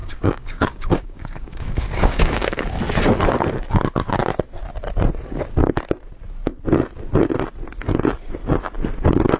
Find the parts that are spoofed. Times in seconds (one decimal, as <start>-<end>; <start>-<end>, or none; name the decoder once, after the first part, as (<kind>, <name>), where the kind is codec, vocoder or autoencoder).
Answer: 0.0-2.8 (codec, DAC)